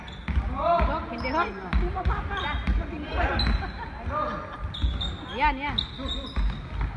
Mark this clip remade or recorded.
recorded